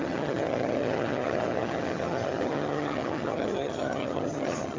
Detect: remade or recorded remade